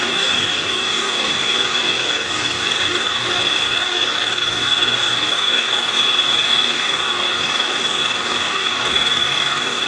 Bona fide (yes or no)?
no